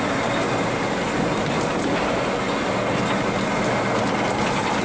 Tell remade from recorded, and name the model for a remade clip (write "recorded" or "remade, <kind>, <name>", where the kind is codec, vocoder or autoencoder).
recorded